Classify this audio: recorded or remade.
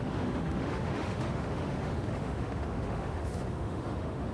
remade